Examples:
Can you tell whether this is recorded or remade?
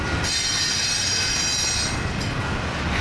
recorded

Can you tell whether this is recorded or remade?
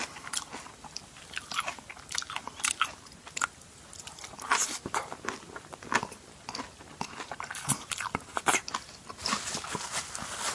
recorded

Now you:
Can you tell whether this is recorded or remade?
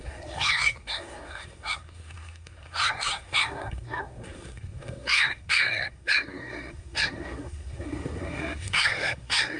remade